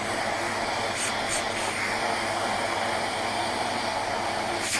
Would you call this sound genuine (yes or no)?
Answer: no